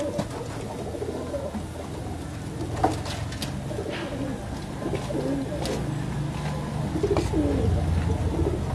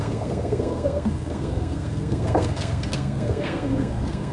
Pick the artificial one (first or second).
second